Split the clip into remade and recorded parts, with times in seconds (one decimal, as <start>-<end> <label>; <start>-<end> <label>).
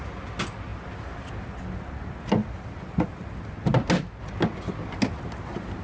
0.0-5.8 recorded